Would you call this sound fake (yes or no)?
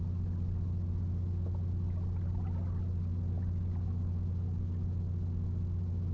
no